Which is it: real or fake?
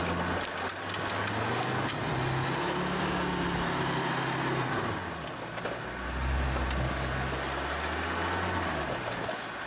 real